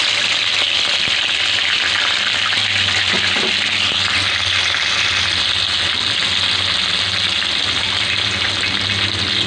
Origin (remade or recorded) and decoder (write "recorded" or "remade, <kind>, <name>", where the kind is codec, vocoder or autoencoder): recorded